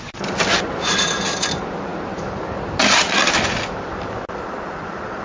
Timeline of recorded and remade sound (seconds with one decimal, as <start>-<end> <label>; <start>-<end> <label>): 0.0-5.2 recorded